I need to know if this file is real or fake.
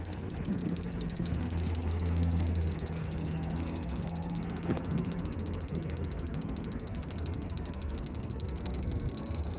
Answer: fake